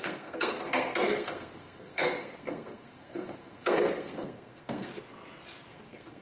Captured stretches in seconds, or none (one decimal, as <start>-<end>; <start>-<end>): 4.9-5.7